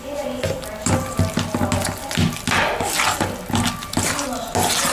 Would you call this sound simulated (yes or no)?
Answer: no